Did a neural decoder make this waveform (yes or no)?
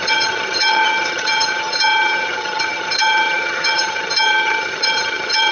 yes